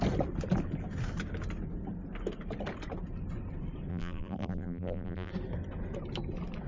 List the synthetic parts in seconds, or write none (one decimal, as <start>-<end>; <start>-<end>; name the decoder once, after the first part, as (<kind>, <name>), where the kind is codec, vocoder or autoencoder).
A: 3.9-5.3 (vocoder, BigVGAN v2)

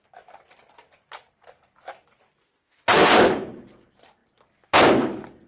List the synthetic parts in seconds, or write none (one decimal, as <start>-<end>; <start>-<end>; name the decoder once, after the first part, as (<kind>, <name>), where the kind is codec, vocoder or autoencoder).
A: 2.4-3.3 (autoencoder, DAC-VAE)

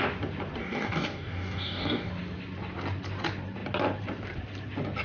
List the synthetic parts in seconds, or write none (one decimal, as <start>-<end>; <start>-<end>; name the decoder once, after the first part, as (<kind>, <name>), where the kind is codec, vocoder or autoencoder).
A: 0.6-2.1 (codec, DAC)

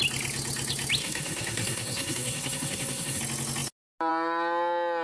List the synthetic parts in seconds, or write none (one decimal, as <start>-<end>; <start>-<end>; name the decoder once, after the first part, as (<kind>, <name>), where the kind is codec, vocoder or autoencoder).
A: 1.0-3.2 (codec, SNAC)